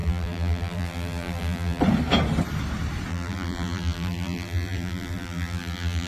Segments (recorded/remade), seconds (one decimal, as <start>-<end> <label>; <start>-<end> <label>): 0.0-1.8 remade; 1.8-3.1 recorded; 3.1-6.1 remade